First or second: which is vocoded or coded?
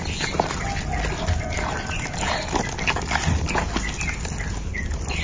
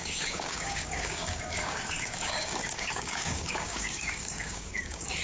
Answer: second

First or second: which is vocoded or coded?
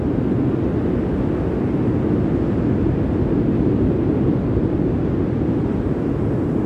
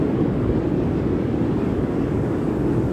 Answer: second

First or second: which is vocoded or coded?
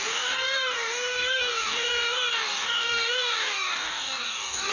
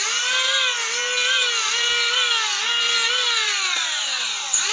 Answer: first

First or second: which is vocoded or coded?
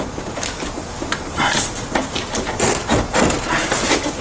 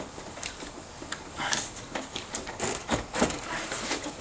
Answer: second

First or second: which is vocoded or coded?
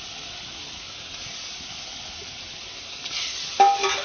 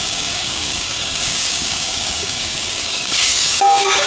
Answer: second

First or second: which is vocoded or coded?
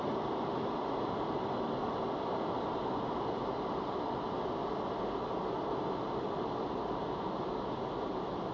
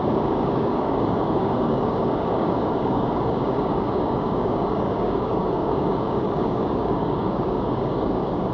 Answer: second